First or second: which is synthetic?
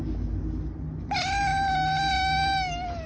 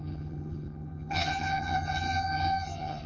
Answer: second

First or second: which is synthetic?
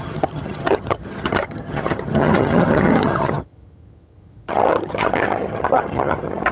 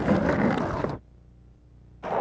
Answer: first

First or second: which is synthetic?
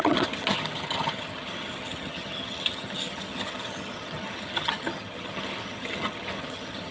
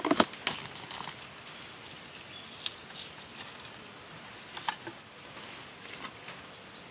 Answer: first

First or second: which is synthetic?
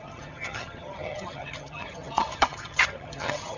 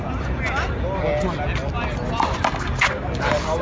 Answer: first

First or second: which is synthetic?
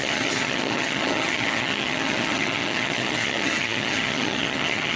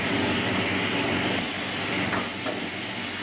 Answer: first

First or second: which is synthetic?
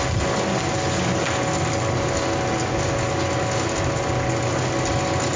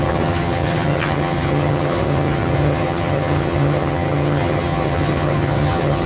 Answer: second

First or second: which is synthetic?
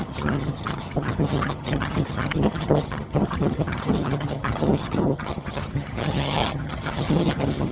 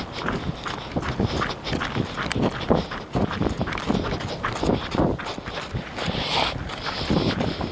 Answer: first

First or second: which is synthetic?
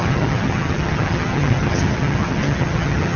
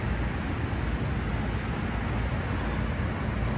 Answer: first